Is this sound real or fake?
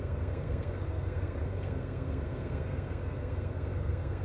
fake